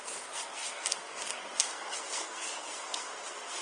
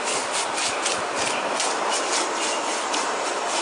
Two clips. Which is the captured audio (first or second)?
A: second